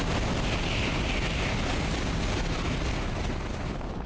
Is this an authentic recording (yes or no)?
yes